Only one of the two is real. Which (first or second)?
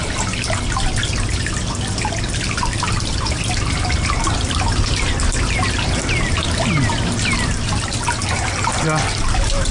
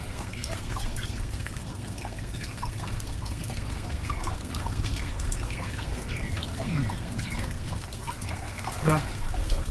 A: first